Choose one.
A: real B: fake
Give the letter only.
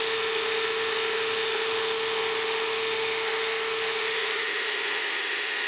B